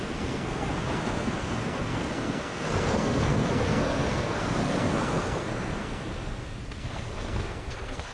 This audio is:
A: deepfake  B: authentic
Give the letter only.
A